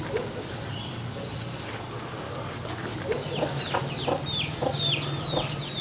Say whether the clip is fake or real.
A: real